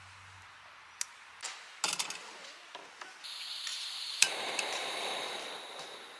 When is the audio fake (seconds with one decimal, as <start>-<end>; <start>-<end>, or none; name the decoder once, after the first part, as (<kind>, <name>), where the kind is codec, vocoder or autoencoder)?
3.7-5.5 (vocoder, BigVGAN v2)